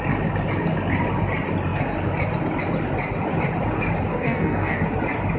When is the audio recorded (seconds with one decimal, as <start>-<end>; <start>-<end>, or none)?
0.0-4.1; 4.8-5.4